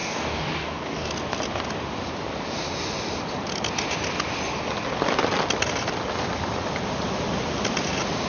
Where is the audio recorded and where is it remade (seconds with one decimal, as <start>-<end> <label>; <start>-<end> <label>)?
0.0-1.1 remade; 1.1-8.3 recorded